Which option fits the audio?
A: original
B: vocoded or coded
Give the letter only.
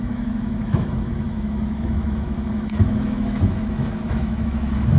B